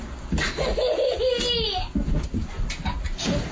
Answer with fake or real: real